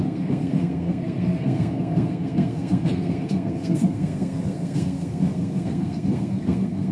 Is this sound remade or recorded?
remade